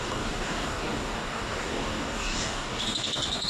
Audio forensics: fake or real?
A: fake